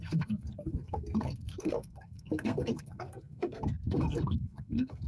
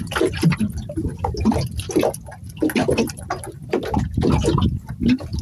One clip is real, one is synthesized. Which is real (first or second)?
second